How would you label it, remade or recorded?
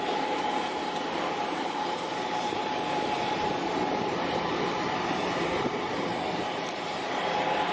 remade